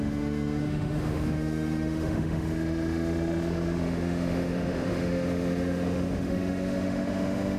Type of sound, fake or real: fake